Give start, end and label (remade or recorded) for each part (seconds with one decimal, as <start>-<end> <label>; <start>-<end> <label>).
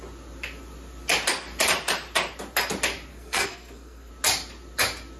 0.0-3.1 recorded; 3.1-4.1 remade; 4.1-5.2 recorded